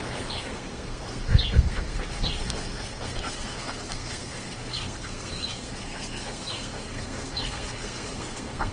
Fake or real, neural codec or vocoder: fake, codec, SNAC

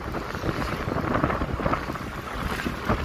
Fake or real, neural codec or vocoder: real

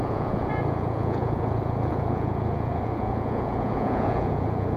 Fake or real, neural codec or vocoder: fake, vocoder, Vocos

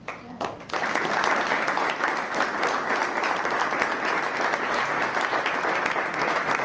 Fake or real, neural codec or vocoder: real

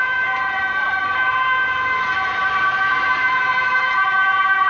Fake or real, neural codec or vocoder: fake, vocoder, BigVGAN v2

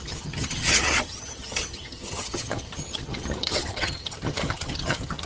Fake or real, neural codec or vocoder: fake, vocoder, HiFi-GAN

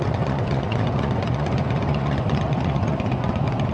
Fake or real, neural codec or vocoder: fake, vocoder, Vocos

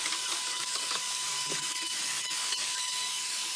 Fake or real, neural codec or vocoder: fake, codec, DAC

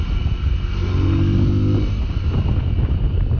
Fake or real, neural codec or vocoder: real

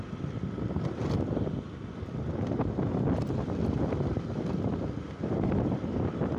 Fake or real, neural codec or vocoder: real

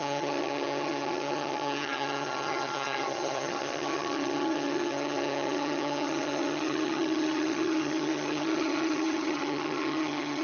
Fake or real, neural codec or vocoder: fake, vocoder, HiFi-GAN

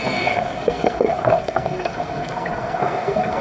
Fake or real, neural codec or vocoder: fake, codec, SNAC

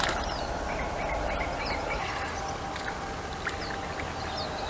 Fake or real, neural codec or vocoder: real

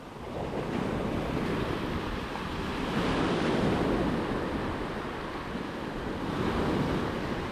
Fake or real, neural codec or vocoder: real